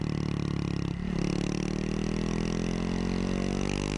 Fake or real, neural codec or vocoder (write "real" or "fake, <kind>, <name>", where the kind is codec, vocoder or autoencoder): real